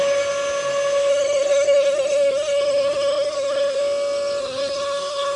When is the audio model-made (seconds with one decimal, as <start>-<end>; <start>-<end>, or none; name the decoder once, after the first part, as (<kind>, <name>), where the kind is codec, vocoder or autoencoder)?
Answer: 1.1-3.8 (codec, SNAC); 4.4-5.4